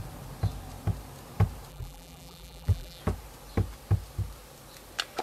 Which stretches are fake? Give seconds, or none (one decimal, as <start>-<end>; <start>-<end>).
1.7-3.0